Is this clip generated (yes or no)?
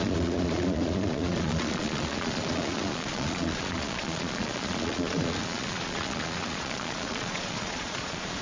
yes